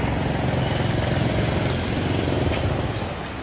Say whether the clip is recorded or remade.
recorded